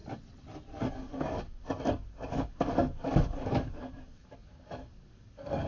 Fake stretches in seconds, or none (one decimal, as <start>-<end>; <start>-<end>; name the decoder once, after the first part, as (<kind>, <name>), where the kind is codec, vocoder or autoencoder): 0.9-5.7 (codec, DAC)